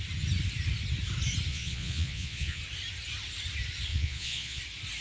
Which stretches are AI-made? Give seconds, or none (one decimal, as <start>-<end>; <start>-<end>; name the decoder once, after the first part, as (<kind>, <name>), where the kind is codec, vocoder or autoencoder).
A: 1.5-2.6 (vocoder, Vocos); 3.9-4.6